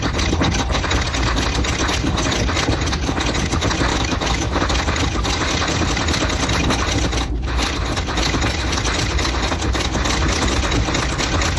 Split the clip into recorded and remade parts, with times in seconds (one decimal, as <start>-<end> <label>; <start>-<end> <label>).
0.0-3.9 recorded; 3.9-4.6 remade; 4.6-11.6 recorded